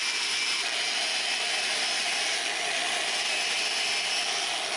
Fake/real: real